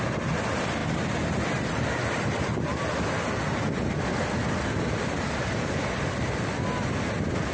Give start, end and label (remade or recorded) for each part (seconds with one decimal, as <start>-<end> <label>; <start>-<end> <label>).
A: 0.0-7.5 recorded